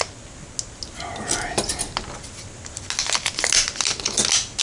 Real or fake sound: real